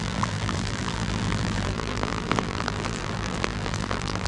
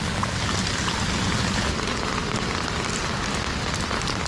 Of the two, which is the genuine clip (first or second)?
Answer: second